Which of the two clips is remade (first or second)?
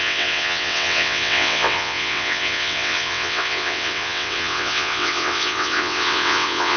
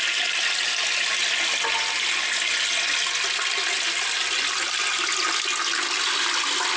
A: first